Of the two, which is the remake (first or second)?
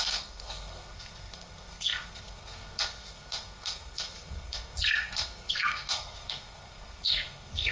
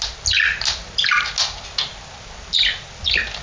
first